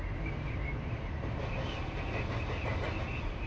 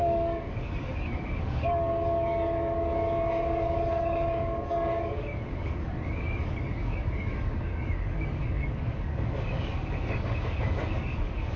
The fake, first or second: second